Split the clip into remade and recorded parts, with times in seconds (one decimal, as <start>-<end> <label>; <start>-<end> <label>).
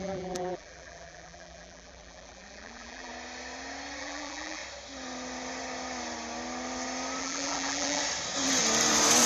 0.0-3.1 remade; 3.1-4.0 recorded; 4.0-4.6 remade; 4.6-7.2 recorded; 7.2-8.0 remade; 8.0-9.3 recorded